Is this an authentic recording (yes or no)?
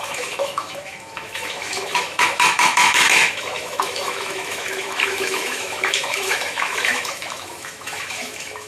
no